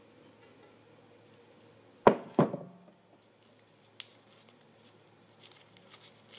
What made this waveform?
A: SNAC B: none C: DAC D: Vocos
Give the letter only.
B